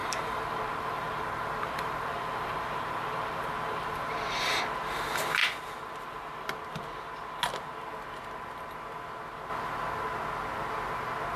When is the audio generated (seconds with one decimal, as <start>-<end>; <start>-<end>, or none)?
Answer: 0.0-4.6